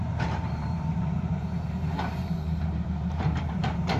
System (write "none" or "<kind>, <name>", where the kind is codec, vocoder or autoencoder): vocoder, BigVGAN v2